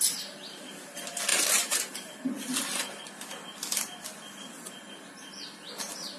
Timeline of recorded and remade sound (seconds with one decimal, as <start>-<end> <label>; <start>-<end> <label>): 0.0-1.3 recorded; 1.3-2.1 remade; 2.1-6.2 recorded

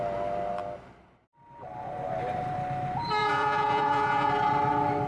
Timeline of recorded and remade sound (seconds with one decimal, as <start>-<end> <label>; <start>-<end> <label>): 0.0-3.2 recorded; 3.2-4.3 remade; 4.3-5.1 recorded

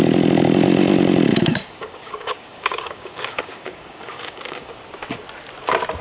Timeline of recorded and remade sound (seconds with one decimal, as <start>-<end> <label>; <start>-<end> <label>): 0.0-1.5 recorded; 1.5-4.8 remade; 4.8-6.0 recorded

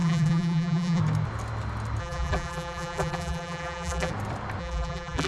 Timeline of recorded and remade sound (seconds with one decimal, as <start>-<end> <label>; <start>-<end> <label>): 0.0-1.0 remade; 1.0-2.0 recorded; 2.0-4.1 remade; 4.1-4.6 recorded; 4.6-5.3 remade